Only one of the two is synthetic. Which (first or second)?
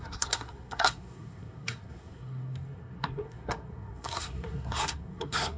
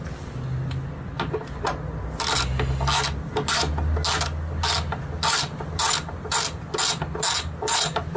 first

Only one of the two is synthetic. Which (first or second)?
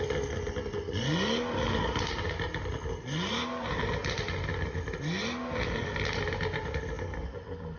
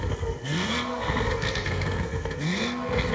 second